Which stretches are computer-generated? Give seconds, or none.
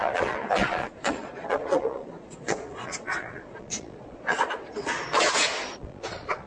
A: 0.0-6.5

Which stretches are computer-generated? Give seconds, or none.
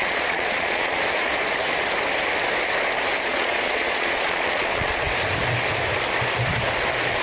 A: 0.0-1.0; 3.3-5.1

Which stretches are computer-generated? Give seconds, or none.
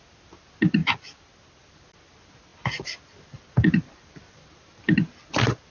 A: none